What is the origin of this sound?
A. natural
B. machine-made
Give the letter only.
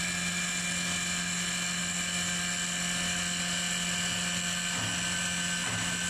A